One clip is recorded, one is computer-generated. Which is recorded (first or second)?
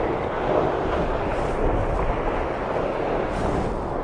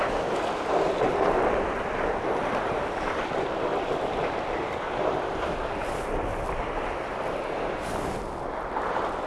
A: first